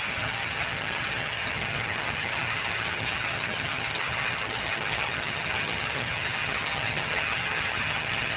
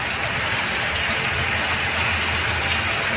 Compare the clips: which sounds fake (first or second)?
first